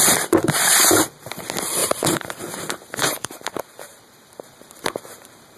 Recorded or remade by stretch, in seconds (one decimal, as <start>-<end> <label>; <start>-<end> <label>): 0.0-1.8 recorded; 1.8-5.6 remade